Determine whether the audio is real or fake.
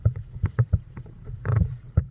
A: fake